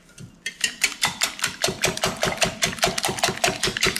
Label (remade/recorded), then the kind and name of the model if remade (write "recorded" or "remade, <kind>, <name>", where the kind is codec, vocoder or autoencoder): remade, vocoder, BigVGAN v2